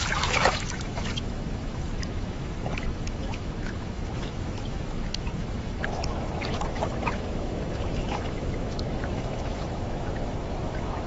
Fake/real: fake